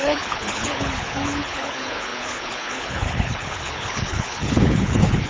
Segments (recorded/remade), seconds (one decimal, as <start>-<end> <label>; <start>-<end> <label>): 0.0-5.3 remade